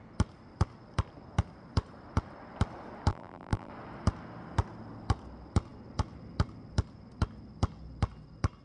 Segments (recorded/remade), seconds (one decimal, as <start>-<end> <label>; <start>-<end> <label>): 0.0-3.1 recorded; 3.1-3.7 remade; 3.7-8.6 recorded